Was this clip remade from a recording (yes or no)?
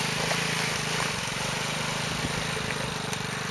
no